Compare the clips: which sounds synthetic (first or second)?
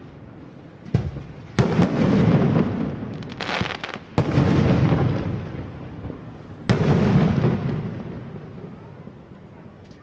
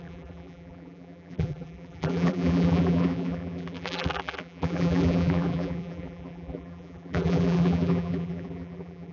second